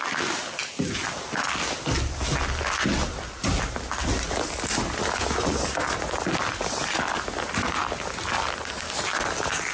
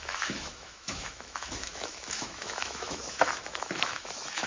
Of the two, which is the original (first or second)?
first